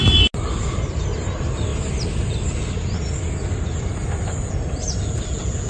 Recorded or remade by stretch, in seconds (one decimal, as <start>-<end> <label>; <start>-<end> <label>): 0.0-5.7 recorded